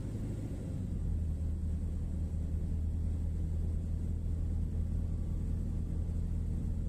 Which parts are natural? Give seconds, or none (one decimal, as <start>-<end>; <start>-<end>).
0.0-6.9